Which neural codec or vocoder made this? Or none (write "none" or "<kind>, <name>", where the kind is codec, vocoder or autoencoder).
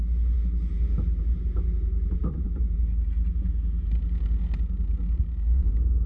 none